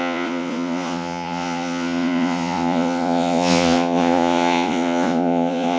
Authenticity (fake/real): fake